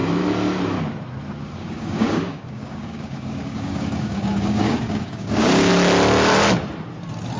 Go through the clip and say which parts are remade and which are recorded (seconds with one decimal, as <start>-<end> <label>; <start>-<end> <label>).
0.0-1.4 recorded; 1.4-5.7 remade; 5.7-7.4 recorded